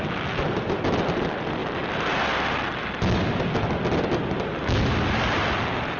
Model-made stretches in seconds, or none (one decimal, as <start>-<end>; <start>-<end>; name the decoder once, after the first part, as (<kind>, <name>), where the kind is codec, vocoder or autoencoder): none